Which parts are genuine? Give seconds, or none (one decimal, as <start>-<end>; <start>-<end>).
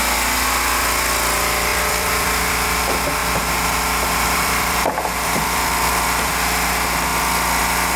0.0-1.7; 2.8-3.2; 5.9-8.0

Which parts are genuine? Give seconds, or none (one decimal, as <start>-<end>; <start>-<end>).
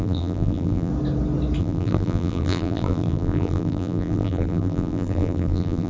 0.9-1.6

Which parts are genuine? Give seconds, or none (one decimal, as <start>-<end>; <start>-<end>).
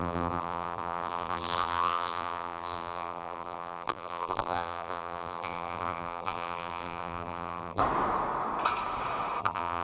7.8-9.4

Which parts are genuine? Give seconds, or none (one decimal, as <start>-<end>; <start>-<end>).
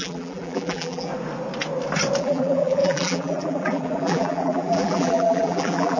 1.1-2.2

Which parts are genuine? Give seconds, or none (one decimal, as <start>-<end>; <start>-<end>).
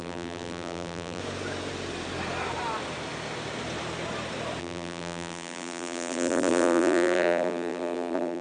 1.2-4.6